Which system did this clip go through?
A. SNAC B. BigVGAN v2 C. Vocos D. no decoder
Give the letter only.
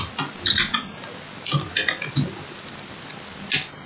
D